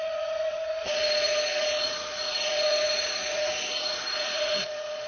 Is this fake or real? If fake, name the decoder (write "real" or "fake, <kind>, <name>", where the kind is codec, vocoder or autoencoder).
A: fake, vocoder, Vocos